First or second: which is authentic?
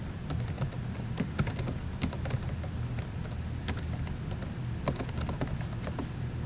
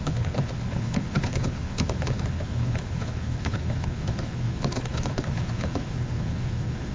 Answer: first